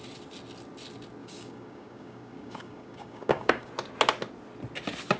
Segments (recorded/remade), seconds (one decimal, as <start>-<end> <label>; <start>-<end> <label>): 0.0-1.2 recorded; 1.2-3.7 remade; 3.7-5.2 recorded